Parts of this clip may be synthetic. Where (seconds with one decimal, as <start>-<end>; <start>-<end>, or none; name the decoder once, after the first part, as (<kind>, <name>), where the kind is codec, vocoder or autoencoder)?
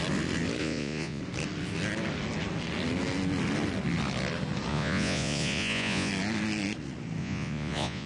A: 0.6-1.2 (vocoder, Vocos); 4.7-6.1; 7.2-8.1